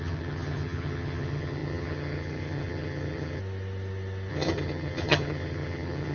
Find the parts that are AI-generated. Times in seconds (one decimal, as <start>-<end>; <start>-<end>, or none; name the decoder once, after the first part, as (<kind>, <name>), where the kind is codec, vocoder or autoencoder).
0.0-3.4 (vocoder, HiFi-GAN); 4.3-6.1